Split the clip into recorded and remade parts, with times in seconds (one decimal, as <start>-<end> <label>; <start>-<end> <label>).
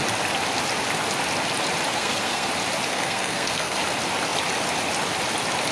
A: 0.0-1.9 recorded; 1.9-2.5 remade; 2.5-2.9 recorded; 2.9-3.8 remade; 3.8-5.7 recorded